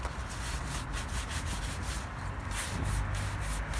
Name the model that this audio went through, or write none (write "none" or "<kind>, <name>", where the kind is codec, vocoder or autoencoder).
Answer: none